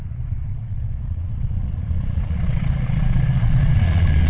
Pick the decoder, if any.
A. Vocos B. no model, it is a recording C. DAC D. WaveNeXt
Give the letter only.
A